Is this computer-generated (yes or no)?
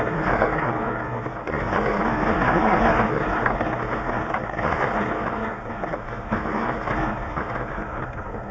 yes